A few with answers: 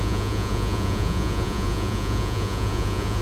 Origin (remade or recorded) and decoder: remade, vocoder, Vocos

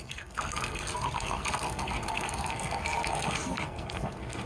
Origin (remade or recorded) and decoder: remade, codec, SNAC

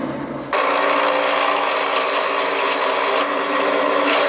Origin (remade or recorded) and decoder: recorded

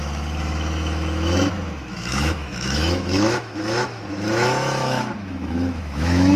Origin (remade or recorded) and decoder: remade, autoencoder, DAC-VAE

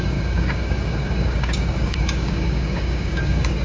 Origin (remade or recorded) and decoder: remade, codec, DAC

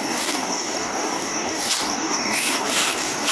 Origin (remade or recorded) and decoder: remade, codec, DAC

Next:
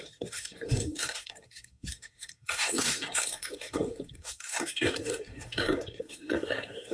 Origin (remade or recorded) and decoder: remade, codec, SNAC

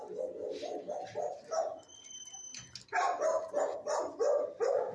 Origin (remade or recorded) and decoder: recorded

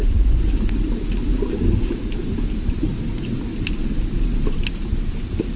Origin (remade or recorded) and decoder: recorded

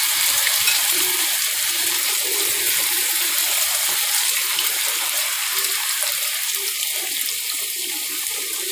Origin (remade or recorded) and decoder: remade, vocoder, BigVGAN v2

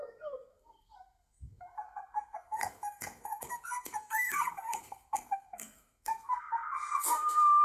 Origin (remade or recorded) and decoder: remade, codec, SNAC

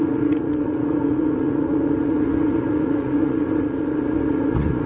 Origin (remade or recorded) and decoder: remade, vocoder, Vocos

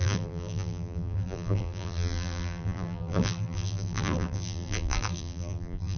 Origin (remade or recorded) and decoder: remade, vocoder, BigVGAN v2